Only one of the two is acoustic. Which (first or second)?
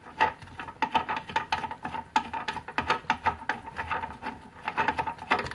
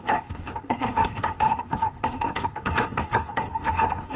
first